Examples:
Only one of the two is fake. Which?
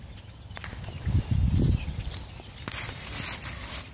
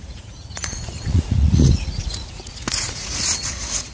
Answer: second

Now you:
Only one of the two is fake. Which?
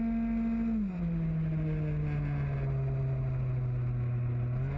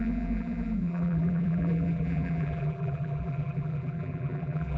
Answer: second